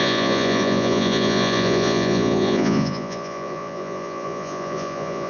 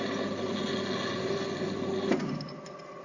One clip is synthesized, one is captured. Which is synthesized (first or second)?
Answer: first